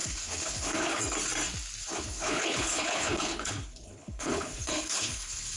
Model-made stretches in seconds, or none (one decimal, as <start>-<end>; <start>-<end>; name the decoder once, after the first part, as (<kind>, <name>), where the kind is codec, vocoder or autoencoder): 0.0-1.0 (codec, HILCodec); 1.8-5.6